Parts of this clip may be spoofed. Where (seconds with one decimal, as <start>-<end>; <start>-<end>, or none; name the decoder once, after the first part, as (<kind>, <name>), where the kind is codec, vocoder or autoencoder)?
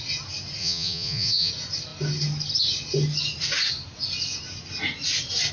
0.6-1.5 (vocoder, Vocos)